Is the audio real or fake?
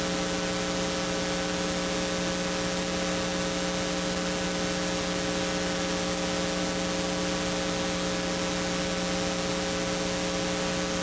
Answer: real